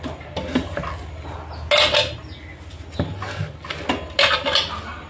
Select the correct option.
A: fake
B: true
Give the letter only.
B